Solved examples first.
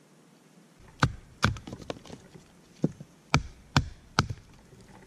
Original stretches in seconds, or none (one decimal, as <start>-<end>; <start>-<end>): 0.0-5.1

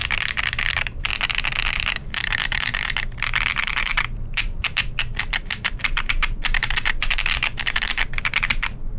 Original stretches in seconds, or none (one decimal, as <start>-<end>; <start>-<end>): 0.0-0.7; 1.1-2.1; 2.7-3.6

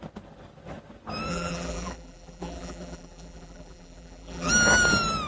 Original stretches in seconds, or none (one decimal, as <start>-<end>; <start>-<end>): 0.0-1.3; 4.5-5.3